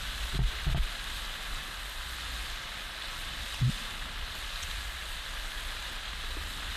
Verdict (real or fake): real